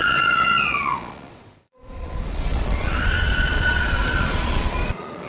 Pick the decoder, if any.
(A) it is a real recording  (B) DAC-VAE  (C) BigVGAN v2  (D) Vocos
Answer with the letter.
D